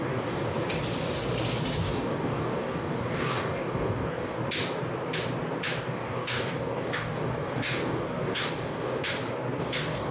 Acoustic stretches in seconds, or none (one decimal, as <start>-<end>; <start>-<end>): 0.4-1.8; 4.4-5.8; 9.0-9.6